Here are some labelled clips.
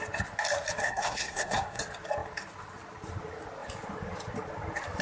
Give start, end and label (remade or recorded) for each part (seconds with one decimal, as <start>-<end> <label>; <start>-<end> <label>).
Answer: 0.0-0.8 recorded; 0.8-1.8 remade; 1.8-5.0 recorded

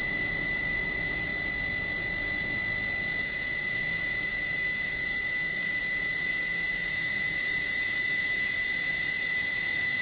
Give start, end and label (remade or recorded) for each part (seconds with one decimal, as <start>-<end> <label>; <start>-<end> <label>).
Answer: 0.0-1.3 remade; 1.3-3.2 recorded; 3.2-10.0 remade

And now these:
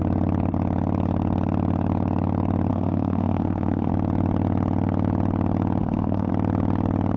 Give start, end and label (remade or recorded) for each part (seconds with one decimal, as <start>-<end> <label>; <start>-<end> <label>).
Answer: 0.0-2.7 recorded; 2.7-3.9 remade; 3.9-5.8 recorded; 5.8-6.3 remade; 6.3-7.2 recorded